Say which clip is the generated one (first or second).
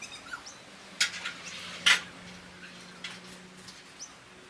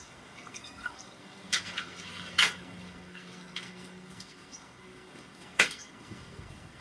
second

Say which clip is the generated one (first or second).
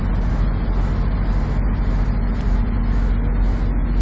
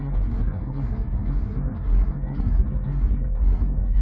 second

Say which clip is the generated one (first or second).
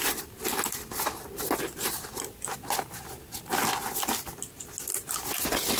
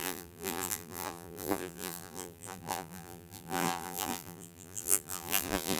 second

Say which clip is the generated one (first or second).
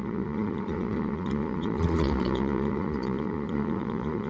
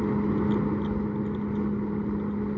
first